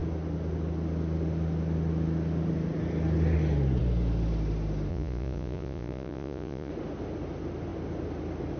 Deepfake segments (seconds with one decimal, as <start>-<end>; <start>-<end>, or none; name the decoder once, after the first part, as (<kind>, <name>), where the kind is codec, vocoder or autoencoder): 4.9-6.7 (vocoder, Vocos)